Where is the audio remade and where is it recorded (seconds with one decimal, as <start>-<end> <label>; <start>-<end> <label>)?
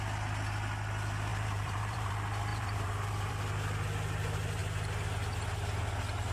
0.0-1.3 recorded; 1.3-2.1 remade; 2.1-2.5 recorded; 2.5-3.3 remade; 3.3-6.3 recorded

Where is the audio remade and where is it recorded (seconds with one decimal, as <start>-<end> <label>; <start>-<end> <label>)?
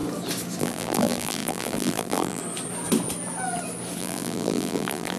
0.0-0.6 recorded; 0.6-2.4 remade; 2.4-4.0 recorded; 4.0-5.2 remade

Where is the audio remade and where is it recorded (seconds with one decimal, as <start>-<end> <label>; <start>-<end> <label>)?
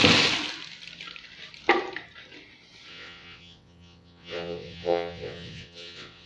0.0-2.9 recorded; 2.9-6.3 remade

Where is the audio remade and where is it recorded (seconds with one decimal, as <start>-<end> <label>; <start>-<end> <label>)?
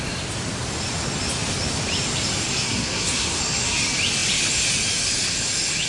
0.0-2.7 recorded; 2.7-3.4 remade; 3.4-5.9 recorded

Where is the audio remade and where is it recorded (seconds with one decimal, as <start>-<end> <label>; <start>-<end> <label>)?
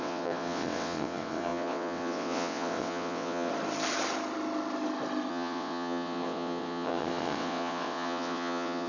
0.0-3.5 remade; 3.5-5.3 recorded; 5.3-8.9 remade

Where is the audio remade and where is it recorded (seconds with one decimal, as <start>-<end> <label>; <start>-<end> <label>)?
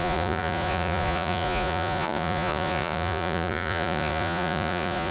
0.0-5.1 remade